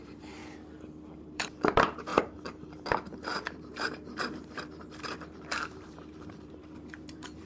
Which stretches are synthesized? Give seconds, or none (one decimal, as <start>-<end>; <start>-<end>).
0.0-0.4; 1.2-7.5